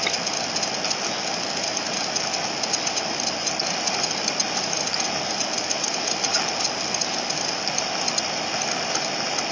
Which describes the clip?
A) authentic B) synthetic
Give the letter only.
A